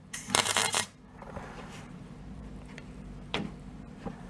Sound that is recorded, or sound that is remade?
remade